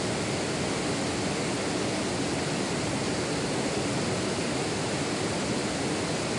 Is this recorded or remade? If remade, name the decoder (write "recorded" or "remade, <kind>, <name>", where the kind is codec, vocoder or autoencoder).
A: recorded